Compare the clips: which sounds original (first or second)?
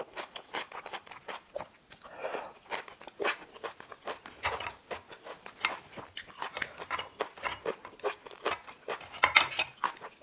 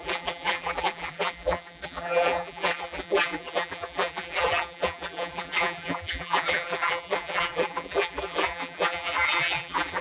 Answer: first